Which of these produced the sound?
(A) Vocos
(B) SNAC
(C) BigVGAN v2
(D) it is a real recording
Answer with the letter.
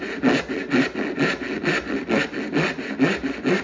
D